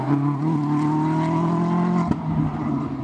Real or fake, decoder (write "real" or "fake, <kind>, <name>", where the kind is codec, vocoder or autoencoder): real